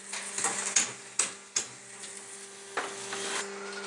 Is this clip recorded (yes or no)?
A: yes